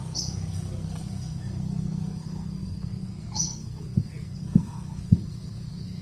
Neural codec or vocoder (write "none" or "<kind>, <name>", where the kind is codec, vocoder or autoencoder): codec, SNAC